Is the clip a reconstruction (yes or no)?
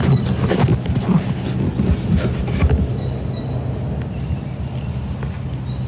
no